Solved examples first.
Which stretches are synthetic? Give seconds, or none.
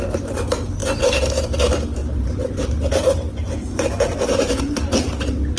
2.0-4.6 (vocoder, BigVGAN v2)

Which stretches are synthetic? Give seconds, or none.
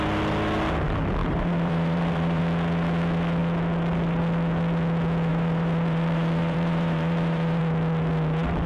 1.2-2.4 (vocoder, BigVGAN v2); 5.3-7.6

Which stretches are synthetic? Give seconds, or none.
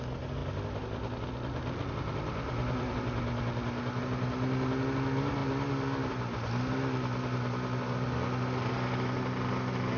none